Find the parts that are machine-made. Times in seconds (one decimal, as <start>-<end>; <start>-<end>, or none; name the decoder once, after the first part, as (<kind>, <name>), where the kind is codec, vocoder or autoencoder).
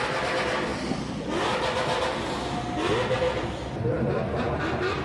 none